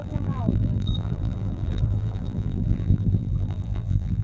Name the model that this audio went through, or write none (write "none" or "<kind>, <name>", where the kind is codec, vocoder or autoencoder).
vocoder, BigVGAN v2